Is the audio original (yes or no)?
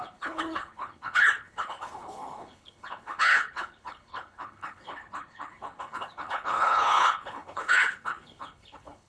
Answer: no